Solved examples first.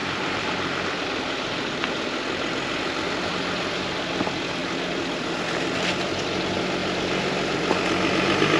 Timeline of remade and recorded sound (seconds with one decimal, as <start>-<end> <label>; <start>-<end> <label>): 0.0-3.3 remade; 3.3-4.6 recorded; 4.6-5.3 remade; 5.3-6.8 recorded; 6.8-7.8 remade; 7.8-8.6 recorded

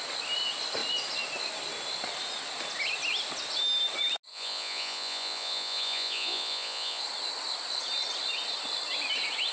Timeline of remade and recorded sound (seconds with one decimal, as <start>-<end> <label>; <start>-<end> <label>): 0.0-4.3 recorded; 4.3-7.0 remade; 7.0-9.5 recorded

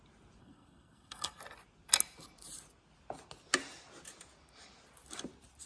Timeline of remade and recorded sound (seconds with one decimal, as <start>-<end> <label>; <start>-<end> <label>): 0.0-0.4 recorded; 0.4-1.4 remade; 1.4-5.7 recorded

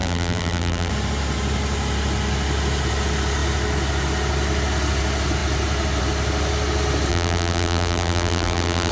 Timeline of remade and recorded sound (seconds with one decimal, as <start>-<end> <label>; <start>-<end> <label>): 0.0-0.9 remade; 0.9-7.1 recorded; 7.1-8.9 remade